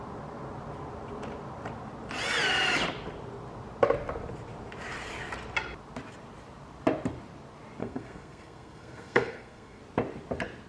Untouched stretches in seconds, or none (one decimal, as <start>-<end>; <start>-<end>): 0.0-7.8; 9.8-10.7